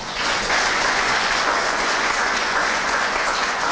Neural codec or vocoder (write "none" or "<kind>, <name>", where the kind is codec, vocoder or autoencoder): vocoder, Vocos